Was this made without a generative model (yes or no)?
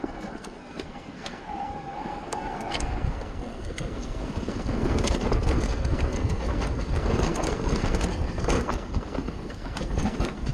no